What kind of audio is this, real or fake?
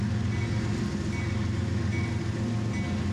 real